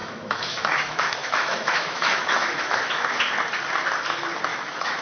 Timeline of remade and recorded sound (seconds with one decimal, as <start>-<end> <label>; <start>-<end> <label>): 0.0-3.0 remade; 3.0-4.5 recorded; 4.5-5.0 remade